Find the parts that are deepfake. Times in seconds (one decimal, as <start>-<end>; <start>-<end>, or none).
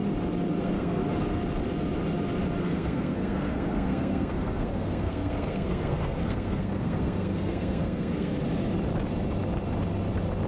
0.6-1.0; 2.6-8.3